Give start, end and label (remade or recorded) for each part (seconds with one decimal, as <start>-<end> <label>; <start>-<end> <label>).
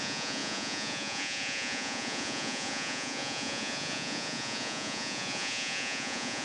0.0-6.4 remade